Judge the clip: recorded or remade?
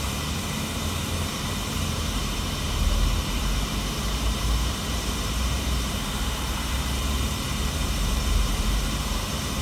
remade